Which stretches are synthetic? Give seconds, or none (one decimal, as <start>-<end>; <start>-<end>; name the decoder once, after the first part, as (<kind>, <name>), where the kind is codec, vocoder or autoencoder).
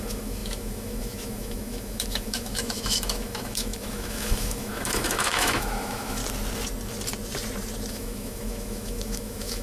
0.0-6.2 (autoencoder, DAC-VAE); 7.9-9.6